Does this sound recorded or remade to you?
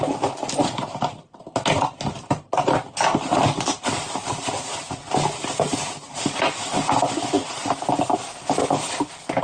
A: recorded